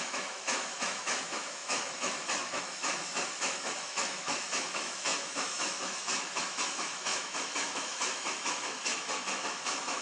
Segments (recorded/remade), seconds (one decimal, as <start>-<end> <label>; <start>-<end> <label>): 0.0-10.0 remade